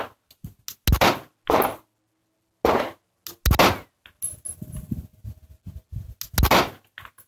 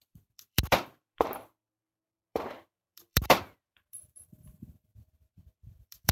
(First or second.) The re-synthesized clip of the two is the second